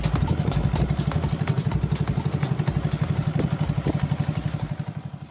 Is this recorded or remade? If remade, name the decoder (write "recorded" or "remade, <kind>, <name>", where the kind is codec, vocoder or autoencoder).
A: recorded